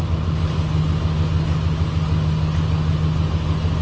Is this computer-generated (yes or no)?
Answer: no